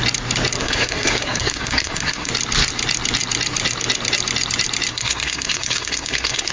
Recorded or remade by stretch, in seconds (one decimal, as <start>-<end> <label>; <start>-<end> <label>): 0.0-0.6 recorded; 0.6-2.3 remade; 2.3-4.9 recorded; 4.9-6.5 remade